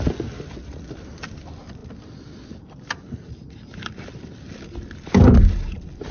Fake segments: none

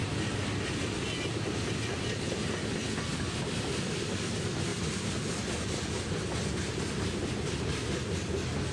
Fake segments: none